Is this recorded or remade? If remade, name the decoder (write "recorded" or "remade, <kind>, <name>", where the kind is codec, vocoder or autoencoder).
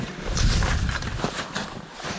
remade, vocoder, BigVGAN v2